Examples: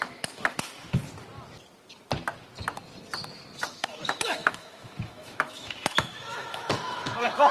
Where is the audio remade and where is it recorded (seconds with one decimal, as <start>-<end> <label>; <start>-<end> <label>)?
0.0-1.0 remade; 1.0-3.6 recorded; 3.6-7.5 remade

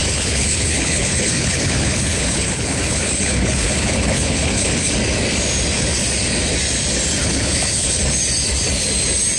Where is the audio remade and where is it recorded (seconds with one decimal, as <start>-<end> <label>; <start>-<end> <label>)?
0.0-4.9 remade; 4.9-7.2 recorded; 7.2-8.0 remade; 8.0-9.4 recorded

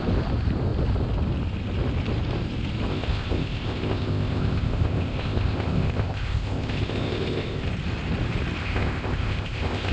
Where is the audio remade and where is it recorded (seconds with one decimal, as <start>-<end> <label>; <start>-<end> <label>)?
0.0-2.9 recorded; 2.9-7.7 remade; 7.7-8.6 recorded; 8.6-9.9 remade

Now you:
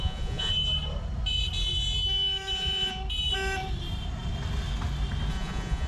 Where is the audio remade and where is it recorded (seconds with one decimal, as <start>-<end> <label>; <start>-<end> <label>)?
0.0-0.5 remade; 0.5-2.5 recorded; 2.5-3.0 remade; 3.0-5.3 recorded; 5.3-5.9 remade

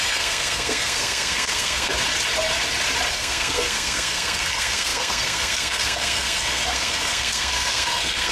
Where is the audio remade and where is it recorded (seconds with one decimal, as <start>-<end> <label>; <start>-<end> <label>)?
0.0-1.9 remade; 1.9-3.1 recorded; 3.1-8.3 remade

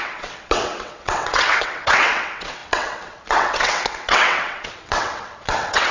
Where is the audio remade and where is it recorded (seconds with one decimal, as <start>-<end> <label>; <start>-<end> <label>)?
0.0-5.9 remade

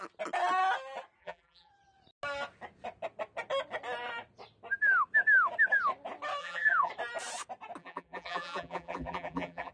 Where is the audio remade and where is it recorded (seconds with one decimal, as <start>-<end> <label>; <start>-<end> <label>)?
0.0-1.2 recorded; 1.2-1.7 remade; 1.7-6.4 recorded; 6.4-6.9 remade; 6.9-7.8 recorded; 7.8-9.7 remade

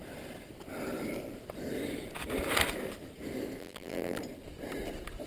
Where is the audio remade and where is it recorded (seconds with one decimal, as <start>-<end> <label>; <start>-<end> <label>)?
0.0-3.6 recorded; 3.6-4.2 remade; 4.2-5.3 recorded